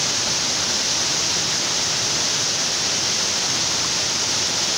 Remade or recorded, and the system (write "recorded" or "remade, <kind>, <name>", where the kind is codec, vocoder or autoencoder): recorded